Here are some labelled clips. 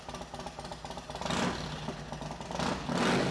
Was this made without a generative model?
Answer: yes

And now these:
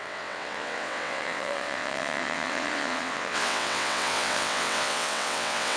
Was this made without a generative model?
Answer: no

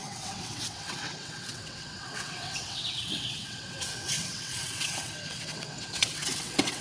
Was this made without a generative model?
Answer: no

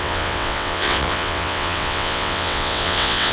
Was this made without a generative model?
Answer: no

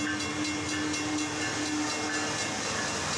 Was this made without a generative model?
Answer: yes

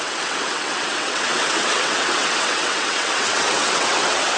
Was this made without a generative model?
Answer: no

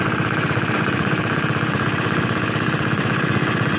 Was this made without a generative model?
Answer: no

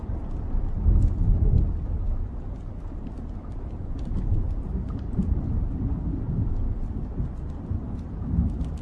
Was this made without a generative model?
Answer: yes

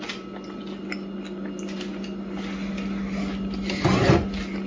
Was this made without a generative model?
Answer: yes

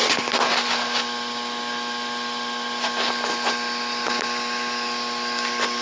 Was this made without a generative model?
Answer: yes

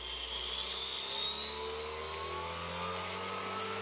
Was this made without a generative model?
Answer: yes